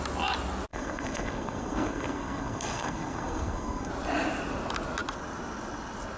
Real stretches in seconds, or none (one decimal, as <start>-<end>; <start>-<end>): 0.0-0.7; 3.9-6.2